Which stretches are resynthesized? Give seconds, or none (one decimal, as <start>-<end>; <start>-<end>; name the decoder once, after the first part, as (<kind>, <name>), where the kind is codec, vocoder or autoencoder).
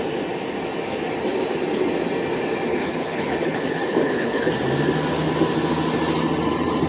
2.7-4.5 (codec, HILCodec)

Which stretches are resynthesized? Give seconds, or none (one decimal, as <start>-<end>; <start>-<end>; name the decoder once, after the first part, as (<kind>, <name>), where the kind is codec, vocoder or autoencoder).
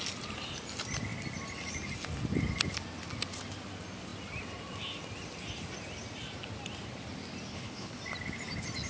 7.5-8.0 (codec, HILCodec)